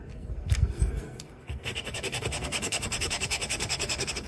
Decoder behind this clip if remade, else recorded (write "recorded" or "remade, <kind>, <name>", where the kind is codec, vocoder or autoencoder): remade, codec, SNAC